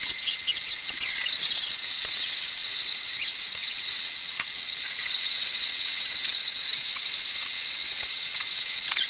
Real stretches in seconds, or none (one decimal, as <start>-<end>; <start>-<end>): none